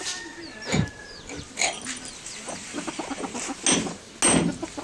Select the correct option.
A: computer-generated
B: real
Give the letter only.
B